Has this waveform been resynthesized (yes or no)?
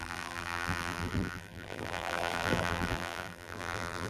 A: yes